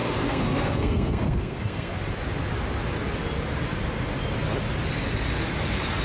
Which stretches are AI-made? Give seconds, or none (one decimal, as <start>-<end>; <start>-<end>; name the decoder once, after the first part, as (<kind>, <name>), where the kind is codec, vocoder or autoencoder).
0.0-1.9 (codec, SNAC)